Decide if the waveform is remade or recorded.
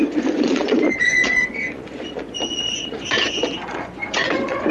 remade